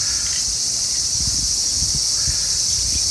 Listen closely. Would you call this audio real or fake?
real